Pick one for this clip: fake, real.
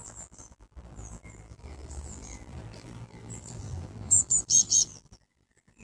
fake